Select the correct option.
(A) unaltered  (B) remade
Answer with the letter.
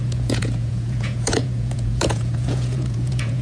B